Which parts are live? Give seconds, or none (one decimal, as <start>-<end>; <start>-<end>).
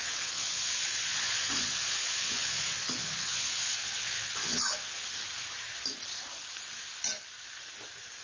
5.0-8.2